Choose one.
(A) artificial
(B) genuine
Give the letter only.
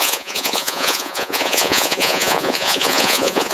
A